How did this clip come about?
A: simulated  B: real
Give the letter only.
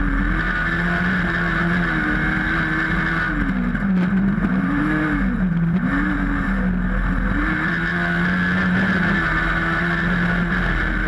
B